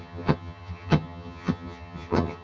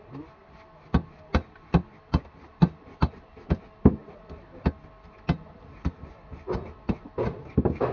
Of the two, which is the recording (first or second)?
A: second